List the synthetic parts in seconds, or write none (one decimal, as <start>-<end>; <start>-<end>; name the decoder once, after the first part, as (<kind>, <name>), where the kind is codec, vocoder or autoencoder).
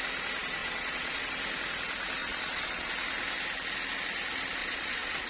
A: 0.6-1.2 (vocoder, Vocos); 2.2-2.9; 4.6-5.3